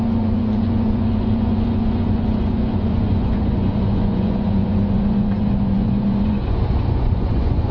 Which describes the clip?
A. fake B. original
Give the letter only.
A